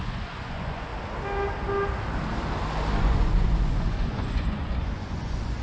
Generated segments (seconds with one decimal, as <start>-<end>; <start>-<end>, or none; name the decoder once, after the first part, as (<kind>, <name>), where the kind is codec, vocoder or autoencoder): 0.0-0.9 (vocoder, Vocos); 3.0-5.6